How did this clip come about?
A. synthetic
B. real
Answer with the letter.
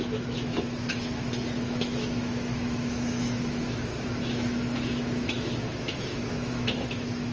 A